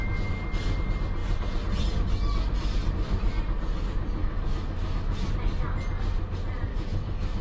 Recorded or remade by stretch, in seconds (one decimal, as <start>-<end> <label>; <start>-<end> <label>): 0.0-4.2 recorded; 4.2-5.3 remade; 5.3-6.7 recorded; 6.7-7.4 remade